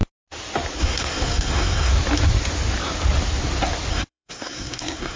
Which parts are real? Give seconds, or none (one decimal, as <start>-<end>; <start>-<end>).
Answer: 0.0-0.8; 1.9-3.9